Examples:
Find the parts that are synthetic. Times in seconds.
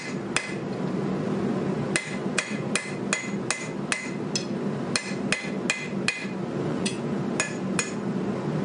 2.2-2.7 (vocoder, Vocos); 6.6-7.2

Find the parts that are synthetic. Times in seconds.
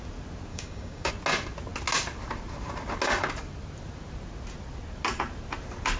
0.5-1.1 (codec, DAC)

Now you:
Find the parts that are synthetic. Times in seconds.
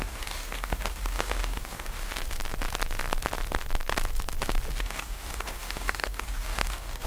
0.0-2.1 (codec, DAC); 4.8-7.1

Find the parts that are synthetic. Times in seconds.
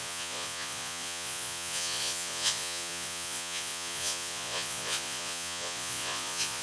0.0-6.6 (vocoder, Vocos)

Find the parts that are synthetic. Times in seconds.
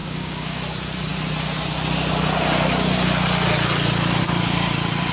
0.0-0.6 (codec, DAC)